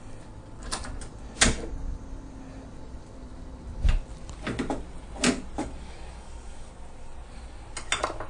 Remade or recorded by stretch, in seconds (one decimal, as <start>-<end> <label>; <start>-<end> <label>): 0.0-5.6 recorded; 5.6-6.7 remade; 6.7-8.3 recorded